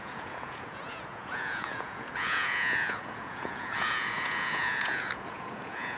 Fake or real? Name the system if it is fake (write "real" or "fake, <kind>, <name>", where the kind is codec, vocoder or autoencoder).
fake, vocoder, Vocos